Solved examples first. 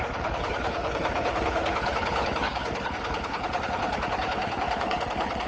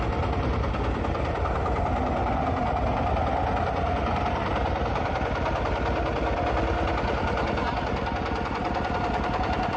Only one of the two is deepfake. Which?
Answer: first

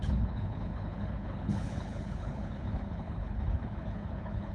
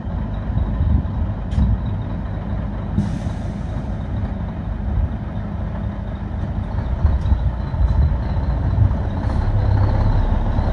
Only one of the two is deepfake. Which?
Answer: first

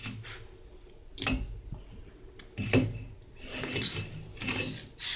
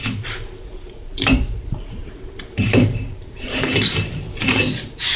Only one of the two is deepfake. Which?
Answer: second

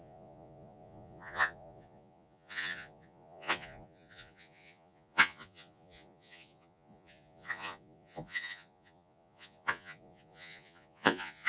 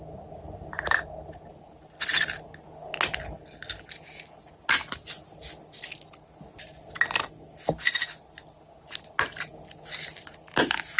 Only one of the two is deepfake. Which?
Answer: first